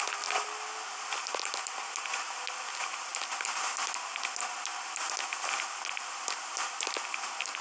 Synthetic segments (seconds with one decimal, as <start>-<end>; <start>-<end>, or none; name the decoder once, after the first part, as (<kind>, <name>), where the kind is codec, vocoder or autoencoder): none